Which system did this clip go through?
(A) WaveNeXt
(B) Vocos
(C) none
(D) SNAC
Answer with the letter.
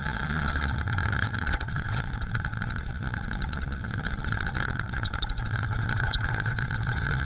A